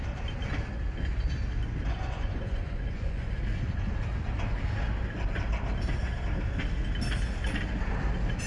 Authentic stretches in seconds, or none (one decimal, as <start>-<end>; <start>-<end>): 0.0-1.9; 3.3-8.5